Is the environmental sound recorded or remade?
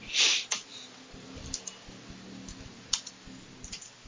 recorded